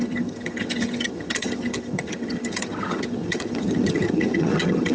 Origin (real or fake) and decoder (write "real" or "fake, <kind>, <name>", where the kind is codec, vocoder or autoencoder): fake, vocoder, HiFi-GAN